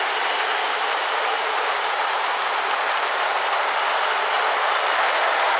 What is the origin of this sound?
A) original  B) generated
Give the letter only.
A